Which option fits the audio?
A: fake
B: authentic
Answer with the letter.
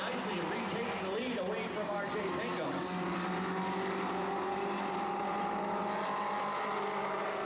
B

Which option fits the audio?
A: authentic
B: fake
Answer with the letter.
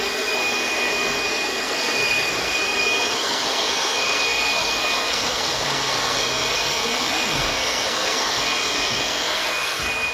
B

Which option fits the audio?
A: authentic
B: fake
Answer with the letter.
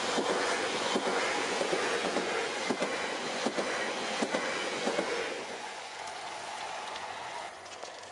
B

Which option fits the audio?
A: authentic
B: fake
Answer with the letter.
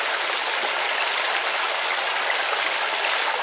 A